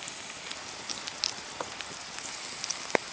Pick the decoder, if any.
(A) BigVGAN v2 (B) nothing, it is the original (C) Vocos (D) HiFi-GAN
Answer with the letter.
B